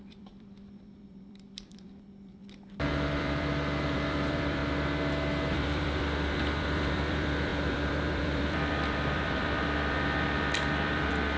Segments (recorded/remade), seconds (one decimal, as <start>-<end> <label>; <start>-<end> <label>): 0.0-2.4 remade; 2.4-2.9 recorded; 2.9-4.6 remade; 4.6-5.5 recorded; 5.5-11.4 remade